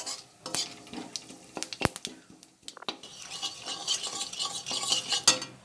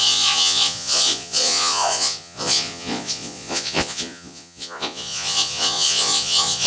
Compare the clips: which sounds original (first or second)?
first